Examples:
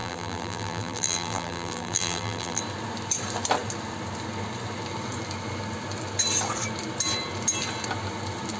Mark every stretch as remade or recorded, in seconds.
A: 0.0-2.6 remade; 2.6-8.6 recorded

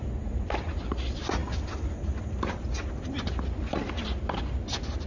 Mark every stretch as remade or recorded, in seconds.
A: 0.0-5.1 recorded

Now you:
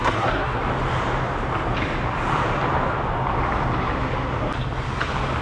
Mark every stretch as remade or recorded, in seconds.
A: 0.0-0.6 remade; 0.6-5.4 recorded

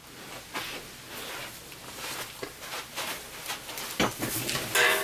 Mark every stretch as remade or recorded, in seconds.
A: 0.0-5.0 recorded

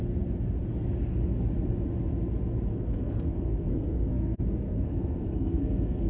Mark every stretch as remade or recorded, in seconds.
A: 0.0-2.7 recorded; 2.7-6.1 remade